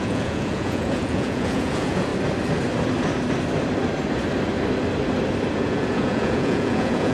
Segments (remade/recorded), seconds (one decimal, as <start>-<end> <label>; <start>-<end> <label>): 0.0-2.1 remade; 2.1-5.5 recorded; 5.5-7.1 remade